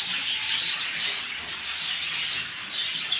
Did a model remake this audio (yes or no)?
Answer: no